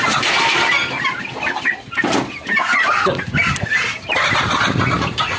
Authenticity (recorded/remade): recorded